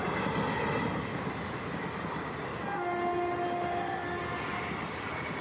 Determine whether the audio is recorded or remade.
recorded